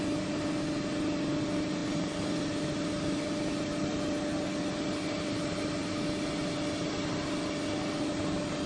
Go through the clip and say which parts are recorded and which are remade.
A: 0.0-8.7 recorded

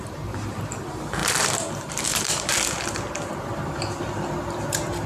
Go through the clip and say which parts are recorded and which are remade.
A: 0.0-1.2 recorded; 1.2-4.3 remade; 4.3-5.1 recorded

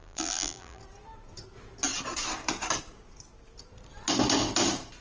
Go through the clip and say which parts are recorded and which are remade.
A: 0.0-0.8 remade; 0.8-5.0 recorded

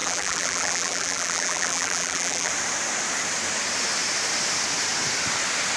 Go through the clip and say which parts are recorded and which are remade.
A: 0.0-2.5 remade; 2.5-5.8 recorded

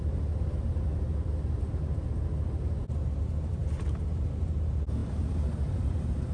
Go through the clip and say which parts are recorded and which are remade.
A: 0.0-0.9 remade; 0.9-2.9 recorded; 2.9-6.3 remade